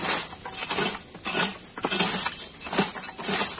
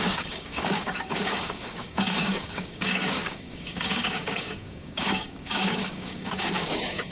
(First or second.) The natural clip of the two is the first